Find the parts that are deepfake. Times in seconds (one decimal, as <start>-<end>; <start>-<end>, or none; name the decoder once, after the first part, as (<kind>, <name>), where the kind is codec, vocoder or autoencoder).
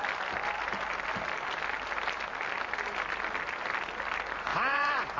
4.5-5.2 (vocoder, Vocos)